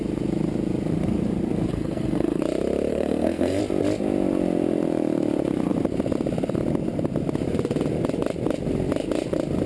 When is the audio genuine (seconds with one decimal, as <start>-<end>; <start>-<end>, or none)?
0.0-1.7; 2.4-2.9; 3.6-9.7